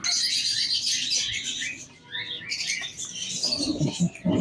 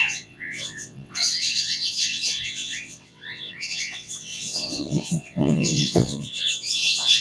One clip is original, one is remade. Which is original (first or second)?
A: first